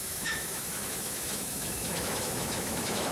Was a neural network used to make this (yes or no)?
yes